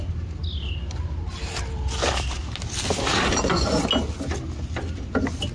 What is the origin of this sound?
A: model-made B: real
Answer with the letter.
B